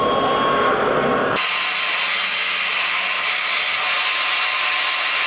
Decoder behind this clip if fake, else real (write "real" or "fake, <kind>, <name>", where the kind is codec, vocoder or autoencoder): real